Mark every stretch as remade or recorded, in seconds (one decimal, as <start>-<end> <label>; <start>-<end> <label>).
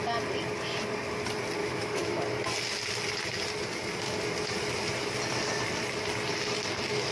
0.0-1.6 recorded; 1.6-2.2 remade; 2.2-7.1 recorded